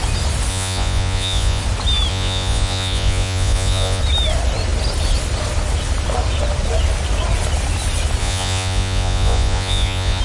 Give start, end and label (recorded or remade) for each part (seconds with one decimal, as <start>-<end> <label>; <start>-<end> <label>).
0.0-0.5 recorded; 0.5-1.6 remade; 1.6-2.1 recorded; 2.1-4.0 remade; 4.0-8.2 recorded; 8.2-10.2 remade